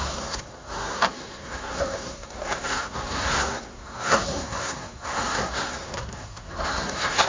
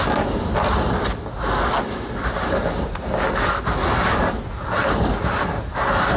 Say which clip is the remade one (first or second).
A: first